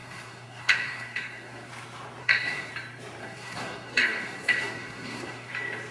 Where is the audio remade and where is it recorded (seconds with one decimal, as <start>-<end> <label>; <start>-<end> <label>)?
0.0-1.7 remade; 1.7-2.2 recorded; 2.2-2.7 remade; 2.7-3.2 recorded; 3.2-5.5 remade; 5.5-5.9 recorded